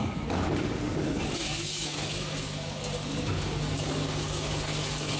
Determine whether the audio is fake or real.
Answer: fake